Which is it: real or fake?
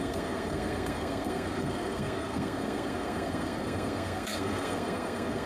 fake